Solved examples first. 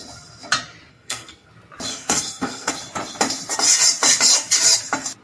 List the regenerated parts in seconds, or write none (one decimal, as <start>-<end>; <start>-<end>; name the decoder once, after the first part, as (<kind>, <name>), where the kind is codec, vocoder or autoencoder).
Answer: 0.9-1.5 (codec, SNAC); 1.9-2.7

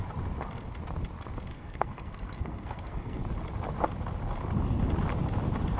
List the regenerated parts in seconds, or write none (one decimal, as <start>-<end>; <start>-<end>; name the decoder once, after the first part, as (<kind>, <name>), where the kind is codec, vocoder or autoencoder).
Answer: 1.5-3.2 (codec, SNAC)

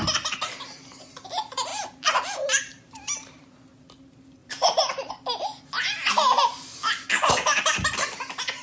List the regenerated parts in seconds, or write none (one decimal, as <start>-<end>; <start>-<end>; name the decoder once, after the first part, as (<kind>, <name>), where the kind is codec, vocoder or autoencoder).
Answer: 1.7-3.5 (vocoder, BigVGAN v2); 4.4-5.1

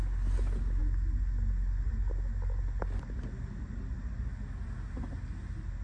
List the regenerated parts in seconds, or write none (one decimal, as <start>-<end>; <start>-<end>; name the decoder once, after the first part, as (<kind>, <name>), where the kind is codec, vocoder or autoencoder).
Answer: none

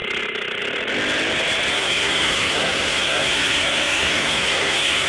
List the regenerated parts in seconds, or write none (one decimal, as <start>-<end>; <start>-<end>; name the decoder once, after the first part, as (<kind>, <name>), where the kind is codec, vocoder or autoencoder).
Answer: 1.7-5.1 (codec, SNAC)

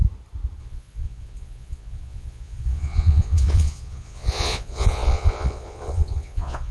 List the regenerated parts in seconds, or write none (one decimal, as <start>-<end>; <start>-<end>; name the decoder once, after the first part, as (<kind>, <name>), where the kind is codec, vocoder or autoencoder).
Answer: 0.6-6.7 (vocoder, Vocos)